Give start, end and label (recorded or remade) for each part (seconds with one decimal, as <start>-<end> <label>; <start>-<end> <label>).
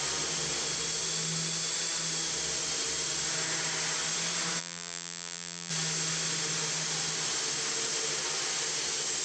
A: 0.0-4.6 recorded; 4.6-5.7 remade; 5.7-9.2 recorded